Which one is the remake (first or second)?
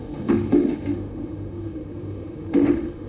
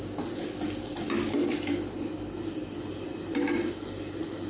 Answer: first